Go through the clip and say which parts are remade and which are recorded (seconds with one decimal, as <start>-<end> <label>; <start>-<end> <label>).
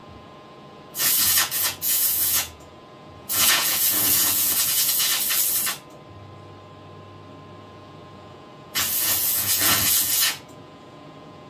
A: 0.0-5.1 remade; 5.1-7.6 recorded; 7.6-11.5 remade